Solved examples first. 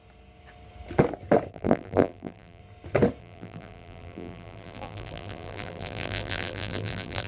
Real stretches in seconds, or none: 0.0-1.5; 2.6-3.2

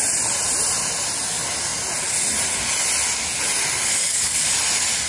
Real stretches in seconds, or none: 0.0-3.9; 4.4-5.1